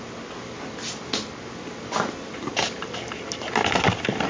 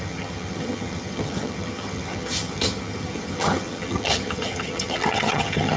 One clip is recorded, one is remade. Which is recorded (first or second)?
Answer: first